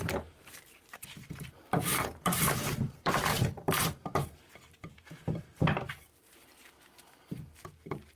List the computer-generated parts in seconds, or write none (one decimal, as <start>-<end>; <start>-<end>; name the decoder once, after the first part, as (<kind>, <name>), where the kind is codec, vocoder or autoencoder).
0.0-8.2 (vocoder, BigVGAN v2)